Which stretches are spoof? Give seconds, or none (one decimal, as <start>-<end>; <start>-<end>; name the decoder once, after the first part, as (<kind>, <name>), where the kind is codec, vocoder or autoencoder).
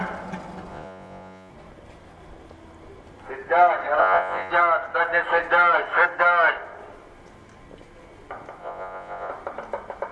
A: 0.7-1.5 (vocoder, Vocos); 4.0-4.5; 8.6-9.3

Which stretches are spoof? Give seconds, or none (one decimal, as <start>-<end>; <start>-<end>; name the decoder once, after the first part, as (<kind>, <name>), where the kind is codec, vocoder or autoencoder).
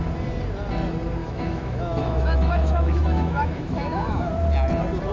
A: 1.2-4.3 (autoencoder, DAC-VAE)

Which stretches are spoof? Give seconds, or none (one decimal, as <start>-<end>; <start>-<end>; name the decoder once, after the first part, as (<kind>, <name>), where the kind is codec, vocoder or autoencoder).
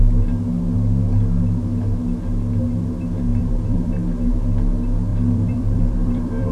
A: 3.3-3.9 (vocoder, BigVGAN v2); 5.1-6.5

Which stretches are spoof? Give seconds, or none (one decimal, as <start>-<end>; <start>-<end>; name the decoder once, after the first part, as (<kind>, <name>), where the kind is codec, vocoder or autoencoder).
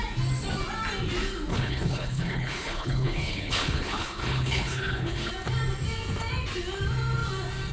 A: 1.5-5.3 (codec, HILCodec)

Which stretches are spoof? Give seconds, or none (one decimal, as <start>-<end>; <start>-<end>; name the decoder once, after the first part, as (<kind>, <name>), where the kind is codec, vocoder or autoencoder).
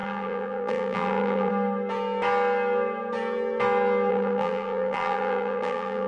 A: 0.0-1.5 (vocoder, BigVGAN v2); 4.1-6.1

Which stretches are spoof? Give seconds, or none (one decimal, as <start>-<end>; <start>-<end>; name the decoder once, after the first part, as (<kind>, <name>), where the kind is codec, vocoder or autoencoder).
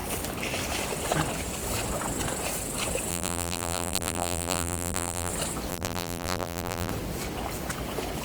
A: 3.1-5.3 (vocoder, BigVGAN v2); 5.7-6.9